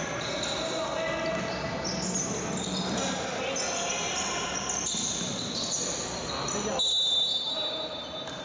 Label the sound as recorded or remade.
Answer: recorded